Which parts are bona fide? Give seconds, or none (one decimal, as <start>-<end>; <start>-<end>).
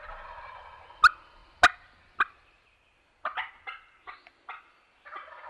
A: 0.0-5.5